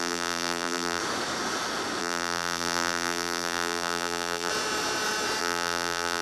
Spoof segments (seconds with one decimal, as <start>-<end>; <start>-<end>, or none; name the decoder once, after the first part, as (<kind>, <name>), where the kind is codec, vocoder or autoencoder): 0.0-1.0 (vocoder, BigVGAN v2); 2.0-4.5; 5.4-6.2